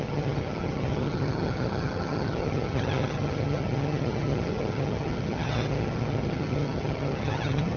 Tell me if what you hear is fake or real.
fake